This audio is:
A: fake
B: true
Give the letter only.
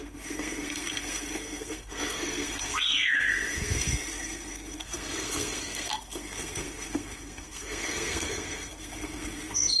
A